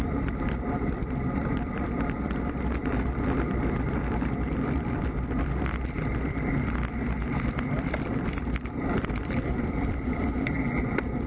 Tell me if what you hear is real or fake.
fake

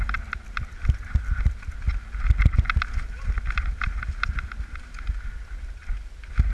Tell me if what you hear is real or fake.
real